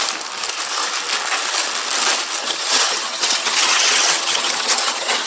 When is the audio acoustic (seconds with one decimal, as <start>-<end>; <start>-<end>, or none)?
0.0-2.4